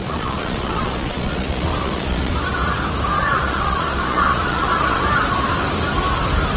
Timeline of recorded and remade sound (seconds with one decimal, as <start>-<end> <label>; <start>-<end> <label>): 0.0-2.3 remade; 2.3-3.1 recorded; 3.1-5.0 remade; 5.0-6.6 recorded